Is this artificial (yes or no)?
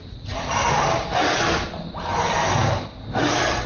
no